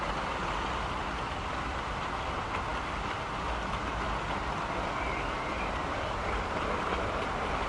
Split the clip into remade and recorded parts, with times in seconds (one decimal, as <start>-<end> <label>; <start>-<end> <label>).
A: 0.0-7.7 recorded